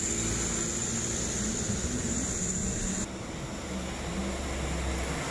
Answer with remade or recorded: recorded